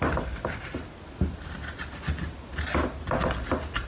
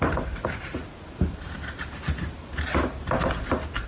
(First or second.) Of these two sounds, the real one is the first